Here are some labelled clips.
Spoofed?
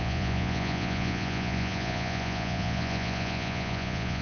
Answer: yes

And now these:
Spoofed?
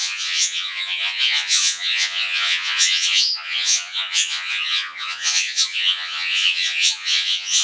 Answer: yes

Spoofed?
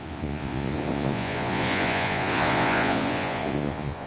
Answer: yes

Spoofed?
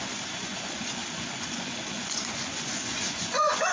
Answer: yes